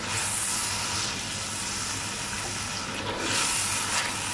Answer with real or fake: real